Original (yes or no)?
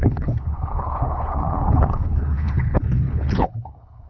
no